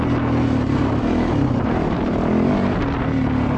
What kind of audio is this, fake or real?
real